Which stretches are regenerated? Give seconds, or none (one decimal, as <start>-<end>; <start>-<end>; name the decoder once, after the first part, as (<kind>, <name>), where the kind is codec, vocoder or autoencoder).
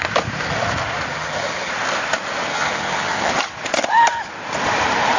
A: 1.1-1.7 (vocoder, HiFi-GAN); 2.5-3.3